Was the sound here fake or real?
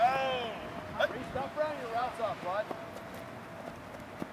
real